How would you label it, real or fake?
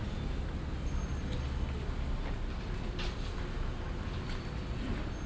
real